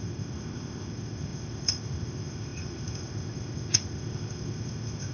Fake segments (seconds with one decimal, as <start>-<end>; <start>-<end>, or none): 0.0-5.1